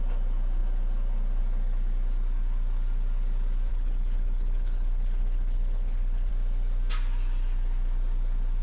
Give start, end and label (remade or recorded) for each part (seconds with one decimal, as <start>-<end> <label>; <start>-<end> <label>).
0.0-3.7 recorded; 3.7-6.3 remade; 6.3-8.6 recorded